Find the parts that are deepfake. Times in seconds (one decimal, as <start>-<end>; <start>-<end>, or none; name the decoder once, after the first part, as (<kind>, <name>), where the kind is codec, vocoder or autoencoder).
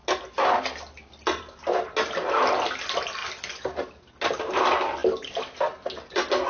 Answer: none